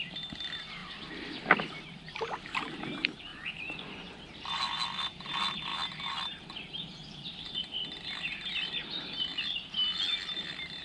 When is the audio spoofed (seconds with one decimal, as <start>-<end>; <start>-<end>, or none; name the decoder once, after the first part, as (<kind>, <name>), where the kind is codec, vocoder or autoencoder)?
3.3-4.2 (vocoder, Vocos)